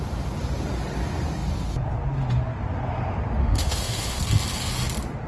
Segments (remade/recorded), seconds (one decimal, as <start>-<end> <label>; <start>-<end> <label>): 0.0-3.4 recorded; 3.4-4.2 remade; 4.2-5.3 recorded